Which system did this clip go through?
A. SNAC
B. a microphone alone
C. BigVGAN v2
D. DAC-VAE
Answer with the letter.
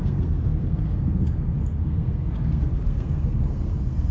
A